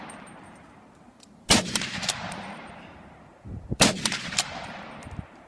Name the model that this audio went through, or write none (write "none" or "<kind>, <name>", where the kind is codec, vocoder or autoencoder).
vocoder, BigVGAN v2